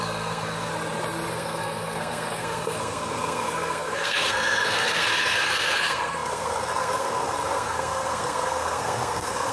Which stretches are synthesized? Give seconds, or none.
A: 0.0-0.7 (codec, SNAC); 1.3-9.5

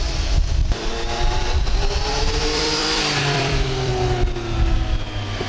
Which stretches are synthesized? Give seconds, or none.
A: 0.6-3.9 (vocoder, BigVGAN v2)

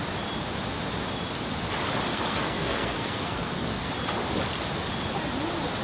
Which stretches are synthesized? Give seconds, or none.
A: 2.1-3.9 (codec, SNAC)

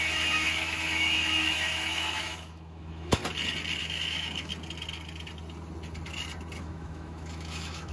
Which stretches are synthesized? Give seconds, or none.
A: 0.0-3.2 (autoencoder, DAC-VAE); 3.8-4.5; 6.6-7.9

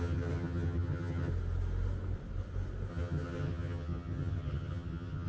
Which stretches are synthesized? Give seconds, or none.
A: 0.0-1.3 (vocoder, HiFi-GAN); 2.9-5.3